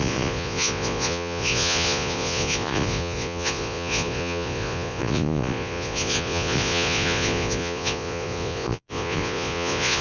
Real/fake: fake